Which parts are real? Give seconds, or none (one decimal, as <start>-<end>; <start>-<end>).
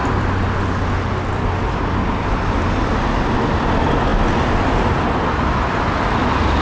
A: 0.0-6.6